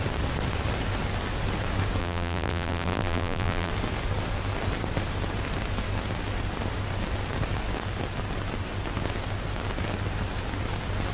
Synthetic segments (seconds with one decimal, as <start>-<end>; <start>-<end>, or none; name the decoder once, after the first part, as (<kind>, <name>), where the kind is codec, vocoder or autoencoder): 2.0-3.7 (vocoder, BigVGAN v2)